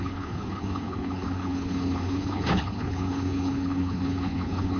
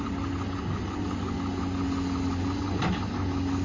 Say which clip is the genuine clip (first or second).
second